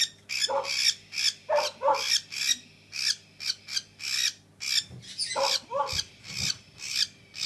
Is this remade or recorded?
recorded